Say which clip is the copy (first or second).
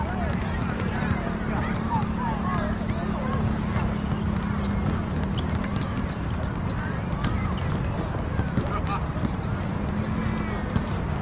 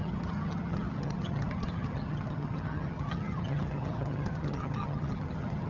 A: second